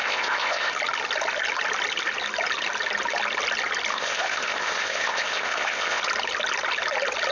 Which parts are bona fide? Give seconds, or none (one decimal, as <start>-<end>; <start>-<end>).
0.7-3.9; 6.0-7.3